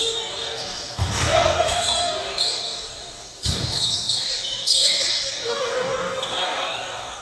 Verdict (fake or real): fake